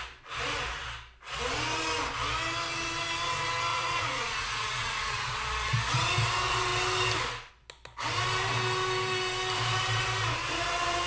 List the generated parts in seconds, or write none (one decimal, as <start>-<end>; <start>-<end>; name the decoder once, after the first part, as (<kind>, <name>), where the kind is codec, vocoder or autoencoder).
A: 3.7-5.3 (vocoder, Vocos)